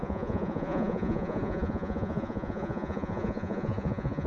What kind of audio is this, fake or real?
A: fake